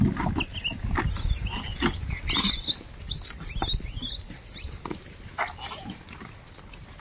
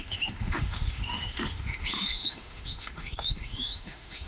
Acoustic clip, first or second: first